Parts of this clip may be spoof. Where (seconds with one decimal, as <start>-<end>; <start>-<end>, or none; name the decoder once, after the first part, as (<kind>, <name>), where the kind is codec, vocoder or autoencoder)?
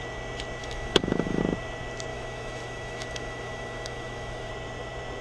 0.6-1.4 (autoencoder, DAC-VAE); 2.1-4.5